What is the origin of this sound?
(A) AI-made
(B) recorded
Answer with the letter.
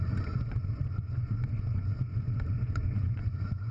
A